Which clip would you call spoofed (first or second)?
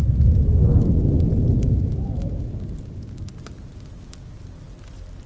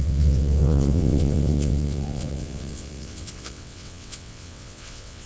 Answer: second